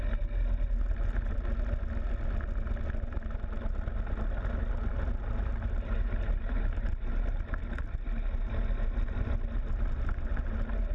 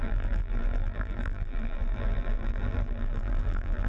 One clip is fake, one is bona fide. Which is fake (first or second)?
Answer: second